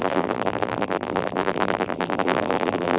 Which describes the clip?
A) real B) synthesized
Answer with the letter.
B